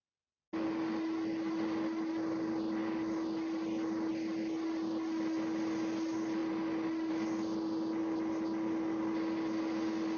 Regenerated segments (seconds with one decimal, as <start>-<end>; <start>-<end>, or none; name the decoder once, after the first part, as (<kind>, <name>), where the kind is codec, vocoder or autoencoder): none